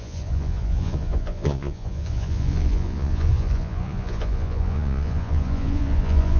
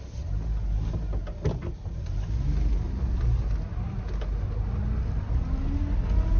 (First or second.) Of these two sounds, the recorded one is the second